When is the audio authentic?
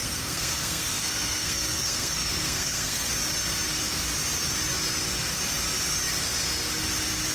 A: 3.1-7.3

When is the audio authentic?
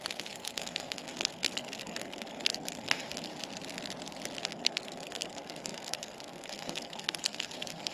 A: 3.3-4.4